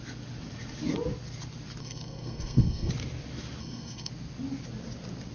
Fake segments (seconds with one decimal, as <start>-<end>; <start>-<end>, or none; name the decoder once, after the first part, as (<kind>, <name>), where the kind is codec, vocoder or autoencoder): 1.8-2.9 (codec, SNAC); 3.6-4.1